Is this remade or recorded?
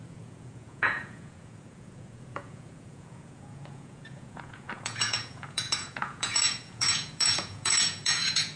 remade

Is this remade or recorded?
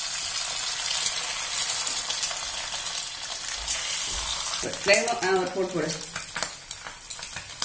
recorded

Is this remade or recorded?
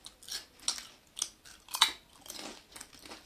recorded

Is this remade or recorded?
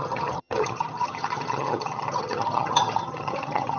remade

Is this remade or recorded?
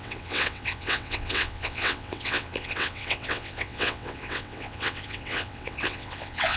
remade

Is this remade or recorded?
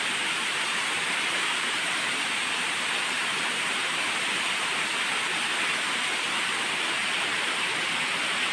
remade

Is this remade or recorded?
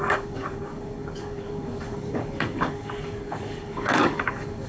remade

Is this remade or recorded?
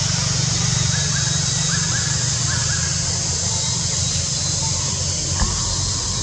recorded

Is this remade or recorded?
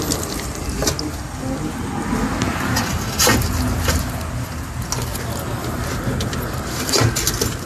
recorded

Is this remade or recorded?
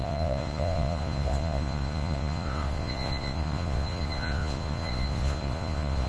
remade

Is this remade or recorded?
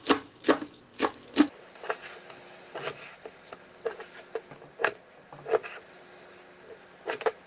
recorded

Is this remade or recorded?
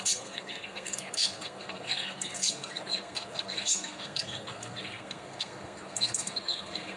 remade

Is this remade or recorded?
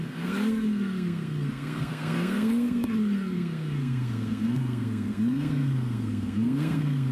remade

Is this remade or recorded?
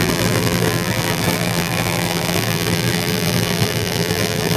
remade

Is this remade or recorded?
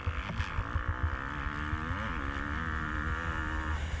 recorded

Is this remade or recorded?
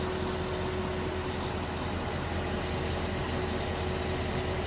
recorded